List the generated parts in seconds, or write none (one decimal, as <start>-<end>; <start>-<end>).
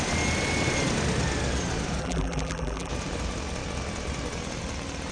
2.0-2.9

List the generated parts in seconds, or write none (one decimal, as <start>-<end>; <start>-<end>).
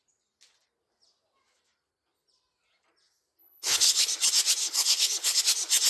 3.4-4.1; 4.6-5.4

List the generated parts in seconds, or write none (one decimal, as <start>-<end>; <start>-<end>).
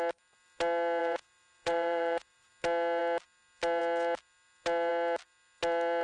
1.0-2.5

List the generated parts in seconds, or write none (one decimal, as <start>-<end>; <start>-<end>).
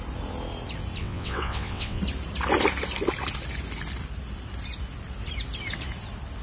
1.0-2.0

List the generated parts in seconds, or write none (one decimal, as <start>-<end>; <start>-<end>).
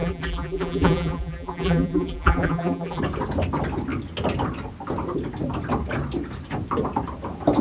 0.0-3.0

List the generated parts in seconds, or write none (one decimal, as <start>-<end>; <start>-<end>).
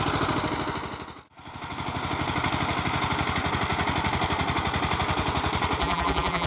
5.8-6.5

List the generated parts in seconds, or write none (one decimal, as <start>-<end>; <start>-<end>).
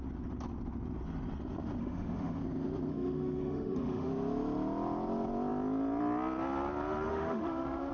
1.8-2.4; 2.9-4.1; 7.1-7.9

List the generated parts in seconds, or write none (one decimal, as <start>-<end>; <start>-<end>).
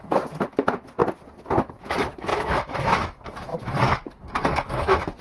0.0-1.0; 1.6-5.2